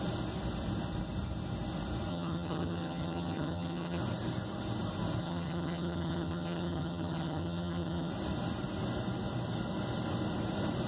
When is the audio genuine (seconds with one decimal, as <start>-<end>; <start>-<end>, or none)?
0.0-2.1; 4.0-5.2; 8.1-10.9